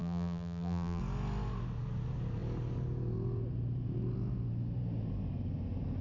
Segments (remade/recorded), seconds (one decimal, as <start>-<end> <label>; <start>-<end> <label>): 0.0-1.0 remade; 1.0-6.0 recorded